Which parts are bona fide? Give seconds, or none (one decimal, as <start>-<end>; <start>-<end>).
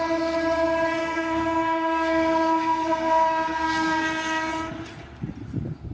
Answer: 0.0-1.0; 4.5-5.9